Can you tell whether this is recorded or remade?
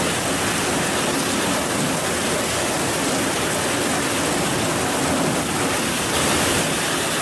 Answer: recorded